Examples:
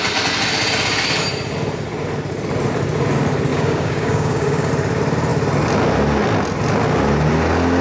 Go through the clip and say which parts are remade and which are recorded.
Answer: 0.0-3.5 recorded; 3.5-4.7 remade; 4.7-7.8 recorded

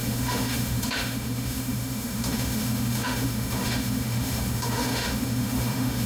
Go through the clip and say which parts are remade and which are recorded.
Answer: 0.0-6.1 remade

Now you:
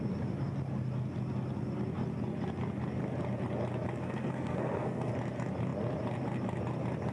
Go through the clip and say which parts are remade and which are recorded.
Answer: 0.0-3.9 recorded; 3.9-5.1 remade; 5.1-7.1 recorded